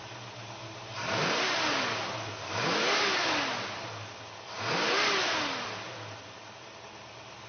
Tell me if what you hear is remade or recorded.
recorded